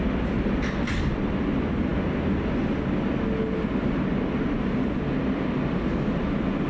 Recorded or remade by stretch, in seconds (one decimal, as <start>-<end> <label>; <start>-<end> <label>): 0.0-6.7 recorded